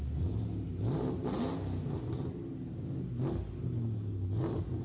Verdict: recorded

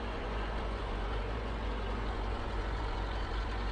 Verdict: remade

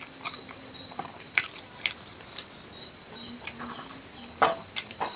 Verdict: recorded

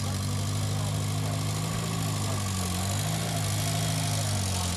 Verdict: recorded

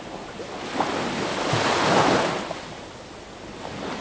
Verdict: recorded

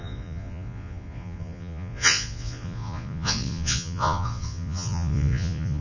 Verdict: remade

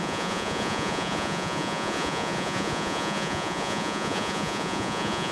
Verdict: remade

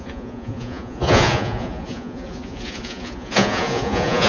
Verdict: remade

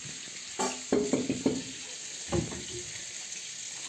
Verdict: recorded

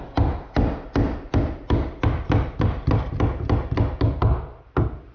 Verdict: recorded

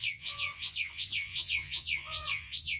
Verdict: remade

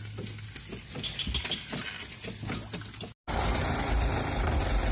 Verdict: recorded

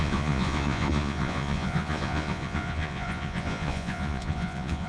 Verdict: remade